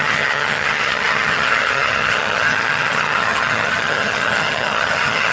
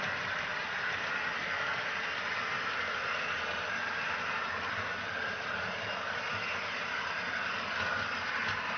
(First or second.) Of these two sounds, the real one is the second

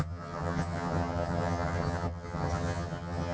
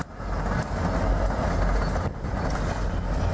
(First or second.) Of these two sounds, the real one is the second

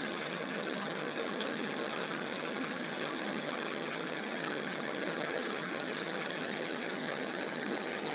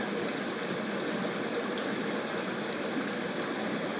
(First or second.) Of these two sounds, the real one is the second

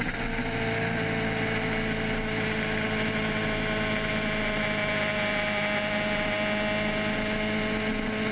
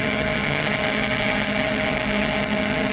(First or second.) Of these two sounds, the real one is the first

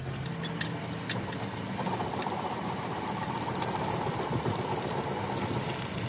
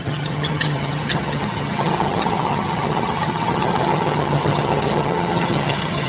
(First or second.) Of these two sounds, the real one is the first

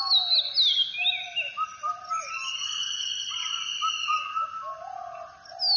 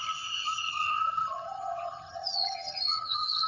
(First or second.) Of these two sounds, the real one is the first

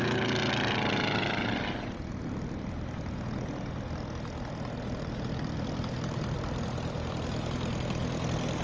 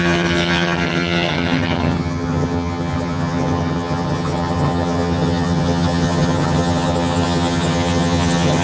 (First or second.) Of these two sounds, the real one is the first